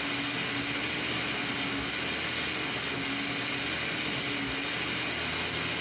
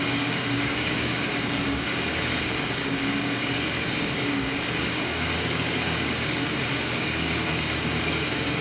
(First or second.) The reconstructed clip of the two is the second